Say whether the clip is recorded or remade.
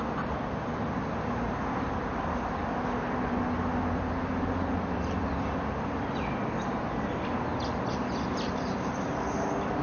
recorded